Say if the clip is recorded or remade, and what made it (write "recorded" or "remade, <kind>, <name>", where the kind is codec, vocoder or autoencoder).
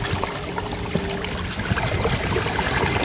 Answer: recorded